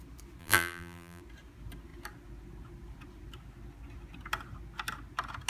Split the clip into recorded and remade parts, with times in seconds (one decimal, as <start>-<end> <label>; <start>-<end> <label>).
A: 0.0-0.4 recorded; 0.4-1.2 remade; 1.2-5.5 recorded